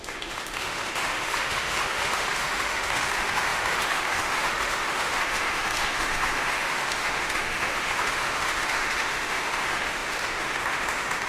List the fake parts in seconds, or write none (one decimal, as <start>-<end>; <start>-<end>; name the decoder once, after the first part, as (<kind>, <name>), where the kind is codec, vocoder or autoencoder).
0.0-11.3 (autoencoder, DAC-VAE)